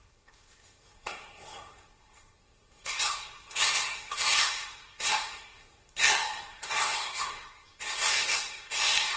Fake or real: fake